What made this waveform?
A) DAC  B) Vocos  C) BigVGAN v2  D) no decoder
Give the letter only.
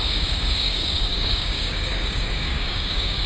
A